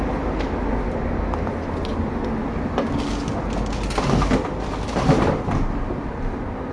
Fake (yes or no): no